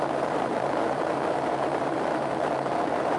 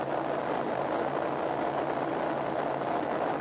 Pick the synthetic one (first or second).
first